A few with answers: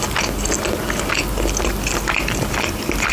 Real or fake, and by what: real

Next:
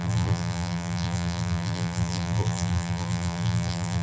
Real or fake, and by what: fake, vocoder, BigVGAN v2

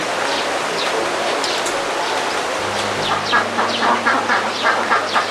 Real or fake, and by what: real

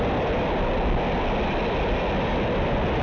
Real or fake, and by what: real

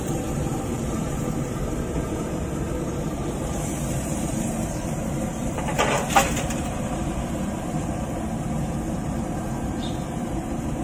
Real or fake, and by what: fake, vocoder, BigVGAN v2